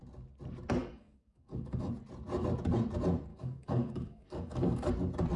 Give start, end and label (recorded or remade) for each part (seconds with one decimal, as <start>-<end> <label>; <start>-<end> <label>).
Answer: 0.0-0.8 recorded; 0.8-1.9 remade; 1.9-3.3 recorded; 3.3-4.9 remade; 4.9-5.4 recorded